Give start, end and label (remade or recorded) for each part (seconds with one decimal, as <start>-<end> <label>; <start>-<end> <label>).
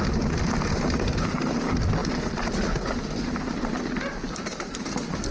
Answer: 0.0-5.3 recorded